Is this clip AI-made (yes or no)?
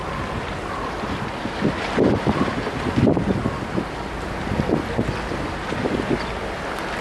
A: no